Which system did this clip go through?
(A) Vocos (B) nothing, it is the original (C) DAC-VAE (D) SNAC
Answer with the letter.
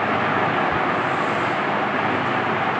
B